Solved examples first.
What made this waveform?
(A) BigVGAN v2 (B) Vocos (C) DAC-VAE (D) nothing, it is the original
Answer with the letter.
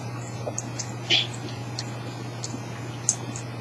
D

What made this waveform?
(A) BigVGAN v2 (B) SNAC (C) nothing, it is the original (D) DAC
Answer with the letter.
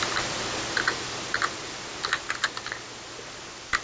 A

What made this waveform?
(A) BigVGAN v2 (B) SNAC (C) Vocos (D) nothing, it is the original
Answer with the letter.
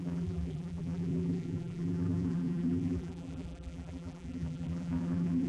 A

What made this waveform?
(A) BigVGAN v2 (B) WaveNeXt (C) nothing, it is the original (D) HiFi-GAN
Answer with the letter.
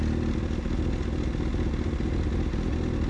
C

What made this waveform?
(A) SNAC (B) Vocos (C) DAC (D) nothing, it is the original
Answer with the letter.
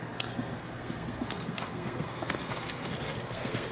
A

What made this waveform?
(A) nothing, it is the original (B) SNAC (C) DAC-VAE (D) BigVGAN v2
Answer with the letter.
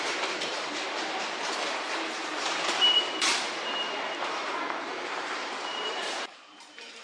D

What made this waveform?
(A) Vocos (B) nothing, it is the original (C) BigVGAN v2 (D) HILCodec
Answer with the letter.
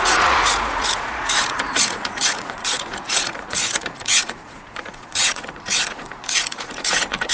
A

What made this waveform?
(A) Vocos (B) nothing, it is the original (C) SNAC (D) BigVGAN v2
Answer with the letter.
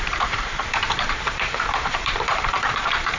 D